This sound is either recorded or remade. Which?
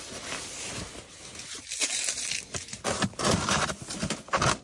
recorded